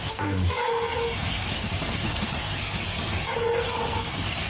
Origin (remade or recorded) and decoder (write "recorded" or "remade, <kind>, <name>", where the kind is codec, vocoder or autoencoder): remade, codec, SNAC